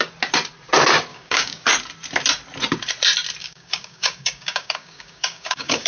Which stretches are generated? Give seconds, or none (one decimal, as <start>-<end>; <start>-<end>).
1.1-1.7; 3.4-5.9